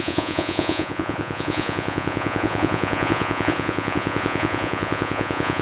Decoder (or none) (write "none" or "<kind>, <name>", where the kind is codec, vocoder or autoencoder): vocoder, Vocos